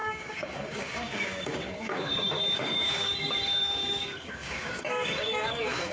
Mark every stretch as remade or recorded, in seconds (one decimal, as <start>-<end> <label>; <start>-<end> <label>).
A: 0.0-5.9 remade